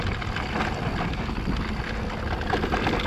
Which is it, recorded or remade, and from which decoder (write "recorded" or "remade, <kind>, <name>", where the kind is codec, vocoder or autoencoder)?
recorded